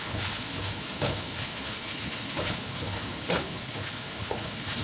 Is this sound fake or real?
fake